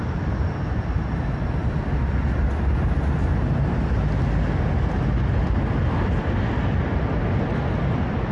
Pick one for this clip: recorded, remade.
recorded